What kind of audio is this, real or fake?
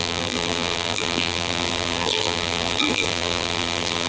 fake